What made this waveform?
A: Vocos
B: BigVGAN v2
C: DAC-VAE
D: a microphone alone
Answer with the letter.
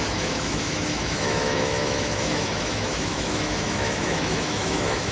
C